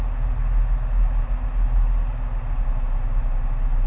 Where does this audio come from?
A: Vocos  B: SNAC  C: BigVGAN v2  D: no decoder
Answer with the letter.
D